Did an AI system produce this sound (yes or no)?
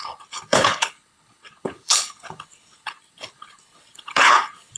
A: yes